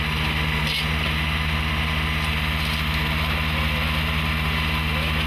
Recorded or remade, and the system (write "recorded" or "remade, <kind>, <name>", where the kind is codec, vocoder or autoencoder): recorded